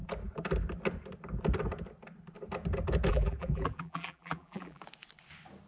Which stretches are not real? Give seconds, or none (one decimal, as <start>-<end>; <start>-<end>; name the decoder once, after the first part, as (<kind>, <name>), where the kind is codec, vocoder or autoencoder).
3.1-4.8 (vocoder, BigVGAN v2)